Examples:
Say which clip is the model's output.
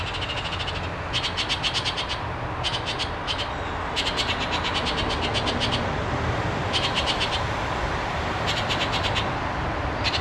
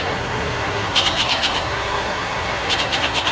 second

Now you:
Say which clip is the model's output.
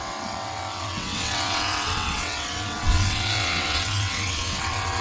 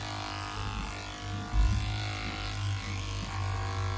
first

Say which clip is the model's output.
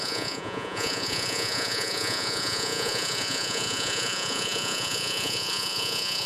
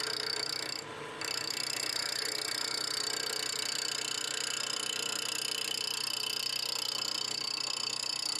first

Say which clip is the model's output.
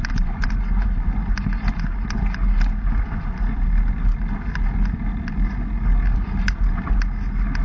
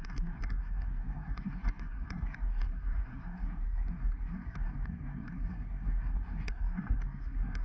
second